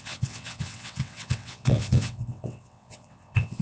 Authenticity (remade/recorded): remade